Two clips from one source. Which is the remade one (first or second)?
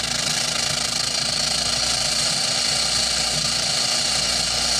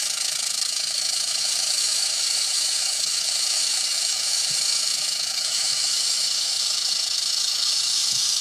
second